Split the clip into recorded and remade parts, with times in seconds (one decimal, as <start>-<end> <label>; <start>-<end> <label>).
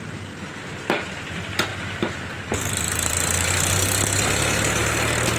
0.0-1.7 recorded; 1.7-3.5 remade; 3.5-5.4 recorded